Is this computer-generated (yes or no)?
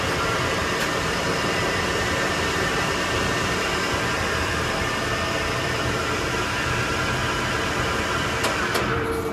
yes